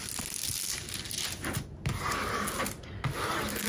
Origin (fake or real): real